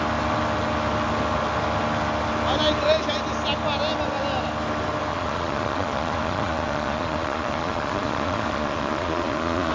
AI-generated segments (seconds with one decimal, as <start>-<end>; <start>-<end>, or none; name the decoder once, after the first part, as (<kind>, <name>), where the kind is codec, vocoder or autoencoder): 5.1-9.7 (vocoder, Vocos)